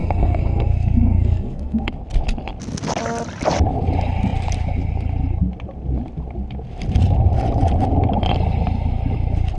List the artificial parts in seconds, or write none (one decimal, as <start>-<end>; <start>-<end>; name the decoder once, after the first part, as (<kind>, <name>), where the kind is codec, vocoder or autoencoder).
0.0-1.9 (codec, SNAC)

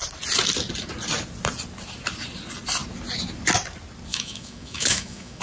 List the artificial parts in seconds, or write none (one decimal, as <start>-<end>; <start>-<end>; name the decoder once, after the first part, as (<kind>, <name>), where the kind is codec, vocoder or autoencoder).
4.1-5.4 (autoencoder, DAC-VAE)